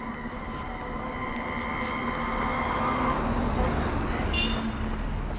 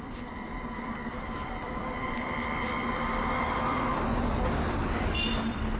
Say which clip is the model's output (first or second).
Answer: second